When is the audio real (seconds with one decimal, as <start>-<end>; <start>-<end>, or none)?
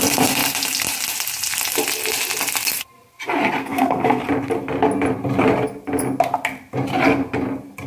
0.0-3.6; 4.2-7.9